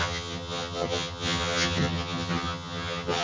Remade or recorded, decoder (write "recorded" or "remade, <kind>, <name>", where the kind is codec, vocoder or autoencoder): remade, vocoder, HiFi-GAN